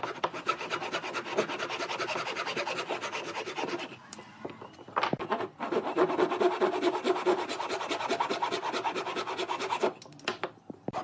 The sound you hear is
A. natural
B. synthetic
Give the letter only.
A